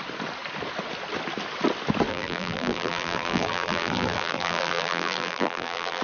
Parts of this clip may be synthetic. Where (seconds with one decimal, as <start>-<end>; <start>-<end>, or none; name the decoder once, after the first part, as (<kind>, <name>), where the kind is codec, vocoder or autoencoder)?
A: 2.1-6.0 (vocoder, BigVGAN v2)